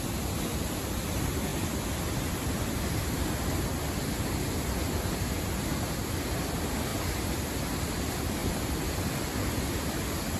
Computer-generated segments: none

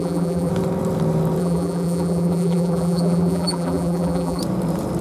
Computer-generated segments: 0.0-0.5 (vocoder, BigVGAN v2); 1.4-4.4

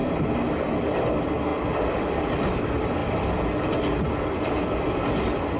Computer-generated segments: 0.7-3.0 (vocoder, BigVGAN v2); 4.1-5.6

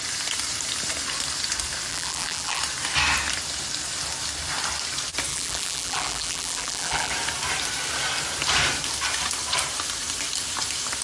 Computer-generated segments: 1.9-2.6 (vocoder, BigVGAN v2); 5.3-7.1

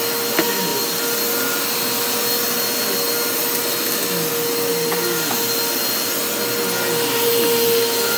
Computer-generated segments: 4.7-5.3 (vocoder, BigVGAN v2)